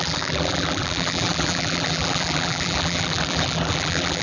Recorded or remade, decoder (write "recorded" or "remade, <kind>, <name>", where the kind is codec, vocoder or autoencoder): remade, vocoder, BigVGAN v2